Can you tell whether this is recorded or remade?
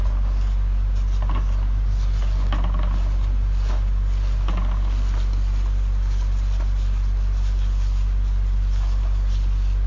recorded